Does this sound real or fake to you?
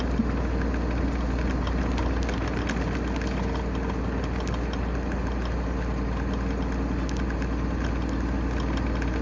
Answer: real